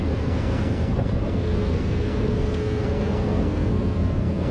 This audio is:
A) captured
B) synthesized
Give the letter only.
B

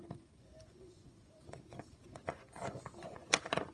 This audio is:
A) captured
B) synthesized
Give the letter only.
B